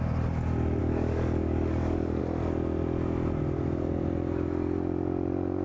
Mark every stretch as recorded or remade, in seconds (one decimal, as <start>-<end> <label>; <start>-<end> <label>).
0.0-0.8 recorded; 0.8-2.2 remade; 2.2-5.6 recorded